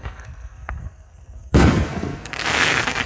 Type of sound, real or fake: fake